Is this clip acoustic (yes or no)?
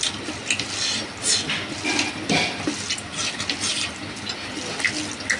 yes